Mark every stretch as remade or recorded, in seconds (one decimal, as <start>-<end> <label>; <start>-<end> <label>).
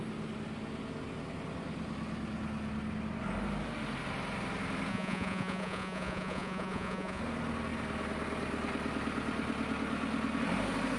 0.0-4.9 recorded; 4.9-7.2 remade; 7.2-11.0 recorded